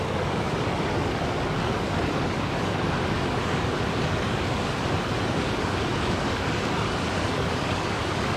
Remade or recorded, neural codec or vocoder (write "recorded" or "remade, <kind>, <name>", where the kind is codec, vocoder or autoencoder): remade, codec, DAC